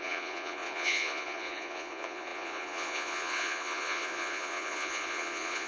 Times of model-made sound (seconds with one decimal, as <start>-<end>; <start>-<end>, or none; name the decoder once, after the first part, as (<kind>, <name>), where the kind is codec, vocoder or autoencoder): 0.0-5.7 (vocoder, Vocos)

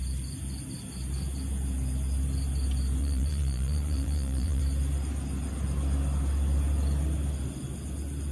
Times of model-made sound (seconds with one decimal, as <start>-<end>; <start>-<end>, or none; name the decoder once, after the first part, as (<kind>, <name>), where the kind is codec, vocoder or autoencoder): 3.0-4.6 (vocoder, Vocos)

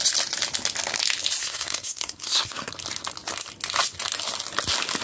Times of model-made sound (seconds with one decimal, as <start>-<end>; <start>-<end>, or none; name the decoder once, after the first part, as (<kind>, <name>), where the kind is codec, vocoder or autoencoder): 1.4-2.7 (codec, SNAC)

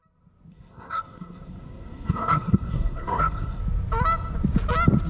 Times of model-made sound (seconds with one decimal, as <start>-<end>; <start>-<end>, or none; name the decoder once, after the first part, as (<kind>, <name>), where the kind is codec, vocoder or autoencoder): 0.5-3.6 (codec, SNAC)

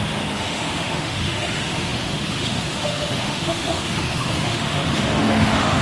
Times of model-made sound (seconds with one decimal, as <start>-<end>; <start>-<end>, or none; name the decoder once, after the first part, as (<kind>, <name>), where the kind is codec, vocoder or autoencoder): 0.0-5.8 (autoencoder, DAC-VAE)